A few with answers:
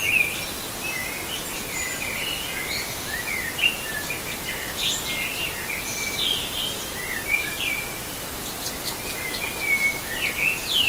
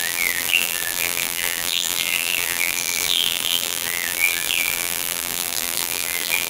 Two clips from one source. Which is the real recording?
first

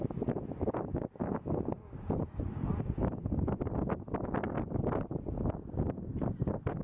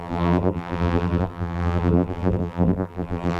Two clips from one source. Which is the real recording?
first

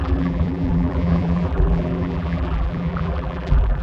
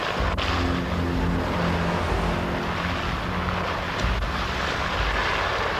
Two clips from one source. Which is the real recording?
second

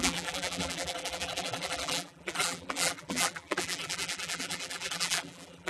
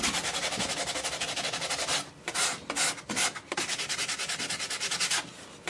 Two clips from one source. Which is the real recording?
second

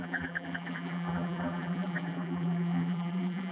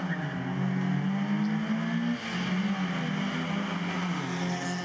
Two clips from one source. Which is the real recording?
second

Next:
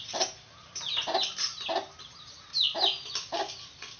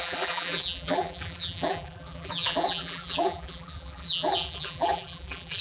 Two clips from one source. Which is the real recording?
first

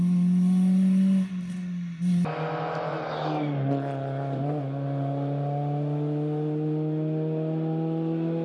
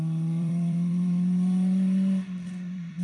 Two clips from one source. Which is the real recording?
first